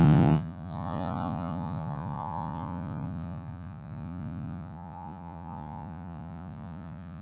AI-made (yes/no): yes